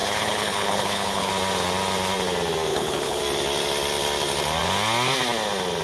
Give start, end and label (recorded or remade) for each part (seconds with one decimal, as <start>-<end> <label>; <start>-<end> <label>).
0.0-1.3 remade; 1.3-2.7 recorded; 2.7-3.2 remade; 3.2-5.8 recorded